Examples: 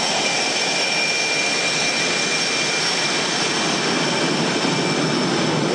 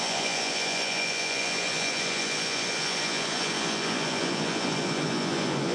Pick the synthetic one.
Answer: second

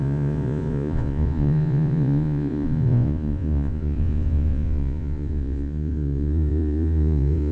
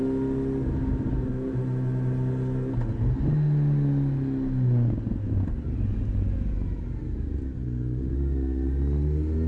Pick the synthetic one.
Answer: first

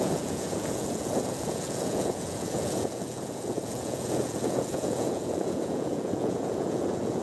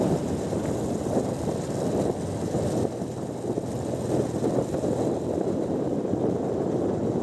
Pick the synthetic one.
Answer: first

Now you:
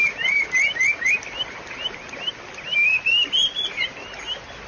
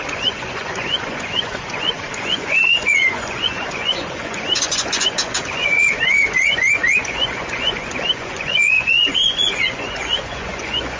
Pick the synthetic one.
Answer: second